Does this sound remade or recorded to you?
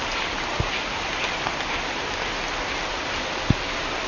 recorded